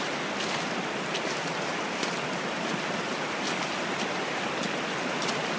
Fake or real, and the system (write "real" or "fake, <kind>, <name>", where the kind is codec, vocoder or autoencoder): real